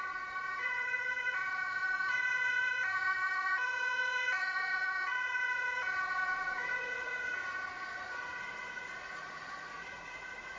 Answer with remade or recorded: remade